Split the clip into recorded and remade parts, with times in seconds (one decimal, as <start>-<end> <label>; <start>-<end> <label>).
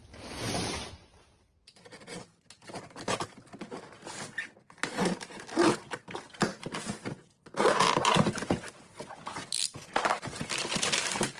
0.0-6.5 recorded; 6.5-10.8 remade; 10.8-11.4 recorded